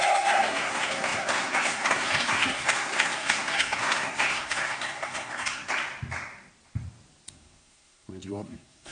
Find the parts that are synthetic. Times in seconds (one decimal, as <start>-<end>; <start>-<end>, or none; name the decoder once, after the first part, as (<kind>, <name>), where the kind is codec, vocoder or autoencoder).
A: 0.0-5.7 (codec, SNAC); 7.3-8.9